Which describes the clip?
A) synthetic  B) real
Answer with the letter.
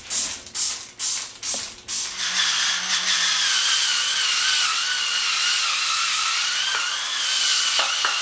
B